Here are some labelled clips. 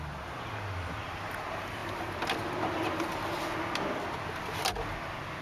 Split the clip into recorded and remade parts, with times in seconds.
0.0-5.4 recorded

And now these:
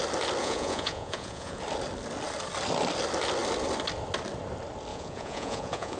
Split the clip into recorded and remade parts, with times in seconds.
0.0-0.4 recorded; 0.4-1.6 remade; 1.6-4.9 recorded; 4.9-6.0 remade

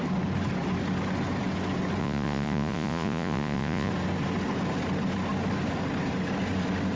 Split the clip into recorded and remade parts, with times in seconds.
0.0-2.0 recorded; 2.0-3.9 remade; 3.9-7.0 recorded

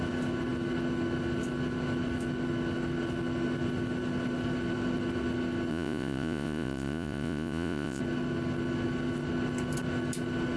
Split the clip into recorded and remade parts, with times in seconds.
0.0-5.7 recorded; 5.7-8.0 remade; 8.0-10.6 recorded

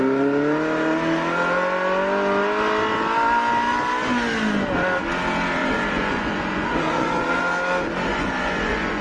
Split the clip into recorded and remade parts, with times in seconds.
0.0-5.6 recorded; 5.6-7.4 remade; 7.4-8.1 recorded; 8.1-9.0 remade

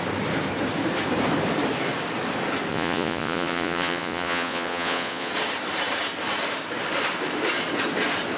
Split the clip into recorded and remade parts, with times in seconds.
0.0-2.7 recorded; 2.7-5.3 remade; 5.3-8.4 recorded

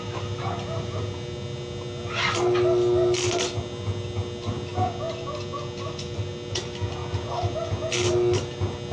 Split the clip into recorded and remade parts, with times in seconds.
0.0-8.9 recorded